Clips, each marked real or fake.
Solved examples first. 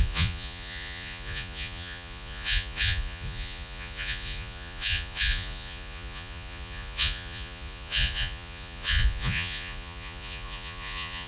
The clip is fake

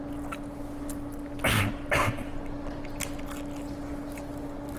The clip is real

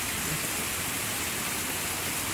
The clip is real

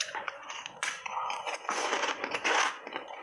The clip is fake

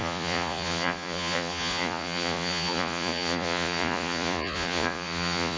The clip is fake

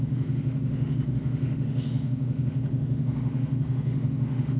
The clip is fake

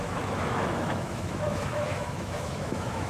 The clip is fake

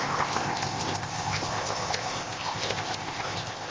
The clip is fake